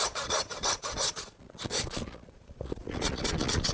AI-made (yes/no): yes